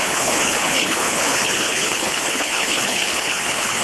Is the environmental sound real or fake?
fake